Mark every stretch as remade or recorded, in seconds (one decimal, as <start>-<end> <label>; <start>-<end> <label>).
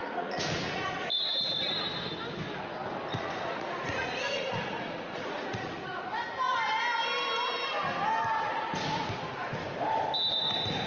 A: 0.0-1.6 remade; 1.6-3.1 recorded; 3.1-6.2 remade; 6.2-10.9 recorded